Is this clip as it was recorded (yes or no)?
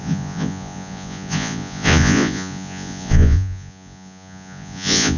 no